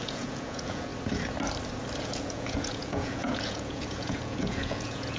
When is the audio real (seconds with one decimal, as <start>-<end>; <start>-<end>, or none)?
0.9-2.0